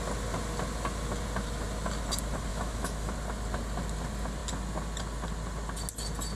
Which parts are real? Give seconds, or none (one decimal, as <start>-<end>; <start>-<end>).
0.0-2.5; 3.1-6.4